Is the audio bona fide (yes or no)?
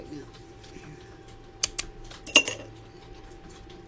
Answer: yes